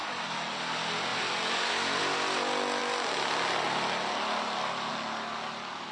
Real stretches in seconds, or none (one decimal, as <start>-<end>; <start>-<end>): 0.5-5.9